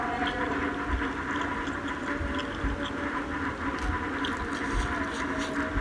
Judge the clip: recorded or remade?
recorded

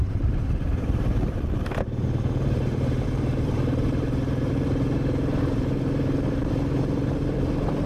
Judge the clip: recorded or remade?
remade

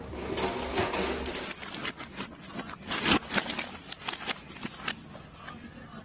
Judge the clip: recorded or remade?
recorded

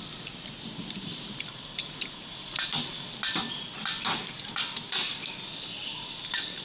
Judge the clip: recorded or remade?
remade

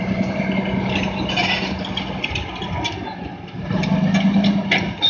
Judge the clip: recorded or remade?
recorded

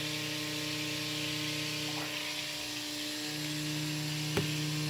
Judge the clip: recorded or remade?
recorded